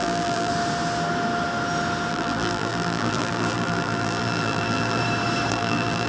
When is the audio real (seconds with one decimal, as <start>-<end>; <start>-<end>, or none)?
0.5-2.1; 5.0-5.5

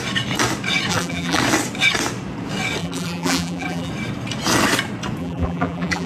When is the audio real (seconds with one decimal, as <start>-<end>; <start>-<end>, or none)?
0.0-0.9; 1.4-2.8; 3.9-5.2

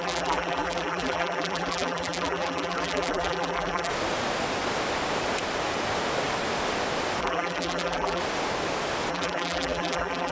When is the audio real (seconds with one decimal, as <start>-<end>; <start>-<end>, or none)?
3.9-7.2; 8.2-9.1

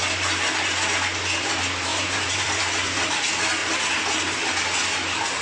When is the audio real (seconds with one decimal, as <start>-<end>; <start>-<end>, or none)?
0.0-1.9; 3.2-5.4

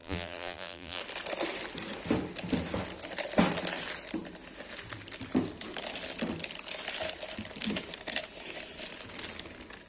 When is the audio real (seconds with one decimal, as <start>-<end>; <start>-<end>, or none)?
1.0-9.9

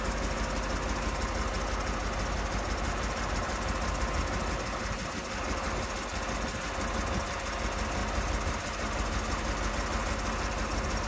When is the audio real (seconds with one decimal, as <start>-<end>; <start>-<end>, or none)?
0.0-11.1